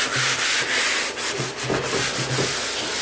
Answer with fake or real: fake